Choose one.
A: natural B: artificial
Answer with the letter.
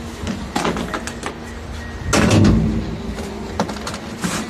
A